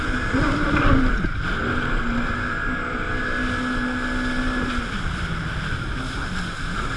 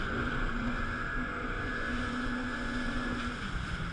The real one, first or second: first